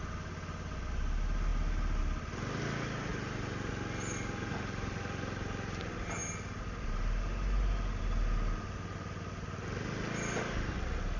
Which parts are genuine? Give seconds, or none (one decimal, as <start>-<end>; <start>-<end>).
0.0-3.1; 3.7-11.2